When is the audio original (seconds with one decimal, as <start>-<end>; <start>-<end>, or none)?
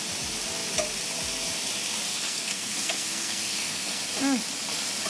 0.0-2.1; 4.0-5.1